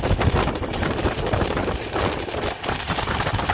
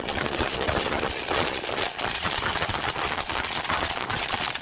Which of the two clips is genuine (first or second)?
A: first